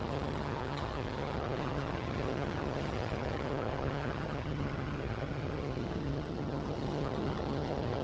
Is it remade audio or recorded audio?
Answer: remade